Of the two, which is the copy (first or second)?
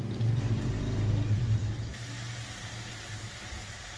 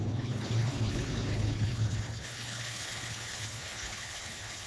second